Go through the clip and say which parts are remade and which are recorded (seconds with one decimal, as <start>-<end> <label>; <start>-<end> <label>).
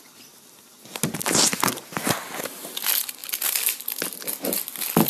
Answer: 0.0-5.1 recorded